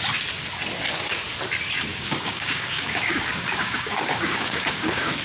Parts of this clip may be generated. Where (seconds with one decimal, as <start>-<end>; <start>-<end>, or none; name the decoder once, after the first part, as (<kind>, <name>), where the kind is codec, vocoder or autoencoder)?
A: 1.9-5.2 (codec, DAC)